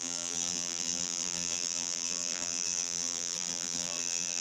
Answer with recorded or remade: remade